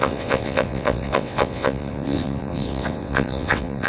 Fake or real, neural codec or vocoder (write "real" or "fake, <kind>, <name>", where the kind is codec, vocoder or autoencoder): fake, vocoder, WaveNeXt